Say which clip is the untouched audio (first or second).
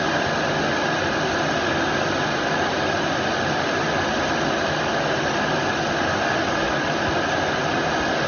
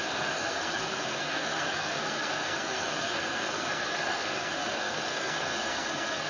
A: first